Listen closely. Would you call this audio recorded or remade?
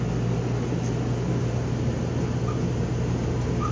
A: recorded